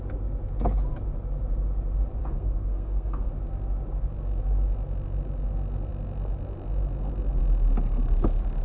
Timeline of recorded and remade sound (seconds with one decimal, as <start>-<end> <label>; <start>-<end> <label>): 0.0-2.2 recorded; 2.2-3.3 remade; 3.3-8.6 recorded